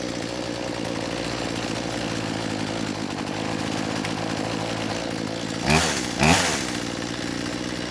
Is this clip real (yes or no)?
yes